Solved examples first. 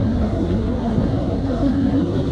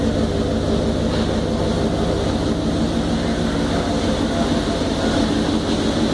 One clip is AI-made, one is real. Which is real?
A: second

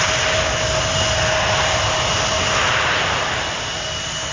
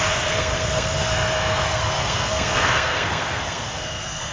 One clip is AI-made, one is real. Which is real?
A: first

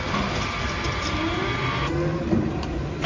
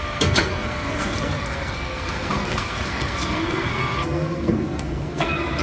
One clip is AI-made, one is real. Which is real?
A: first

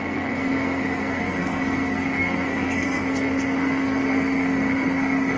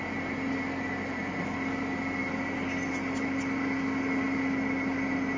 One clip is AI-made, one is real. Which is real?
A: second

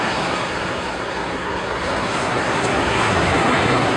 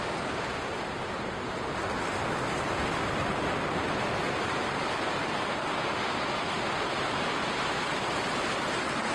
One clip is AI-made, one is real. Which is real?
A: second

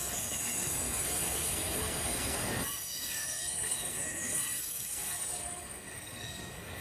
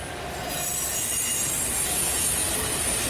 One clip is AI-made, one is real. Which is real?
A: second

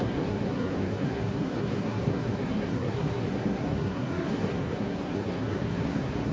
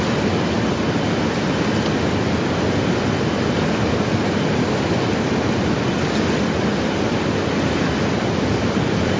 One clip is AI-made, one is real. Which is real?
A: second